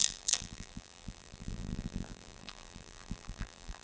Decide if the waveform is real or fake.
fake